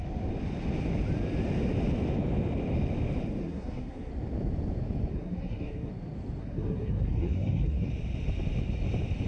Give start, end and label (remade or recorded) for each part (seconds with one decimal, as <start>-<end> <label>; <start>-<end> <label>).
0.0-3.4 recorded; 3.4-4.1 remade; 4.1-5.1 recorded; 5.1-5.9 remade; 5.9-6.4 recorded; 6.4-7.9 remade; 7.9-9.3 recorded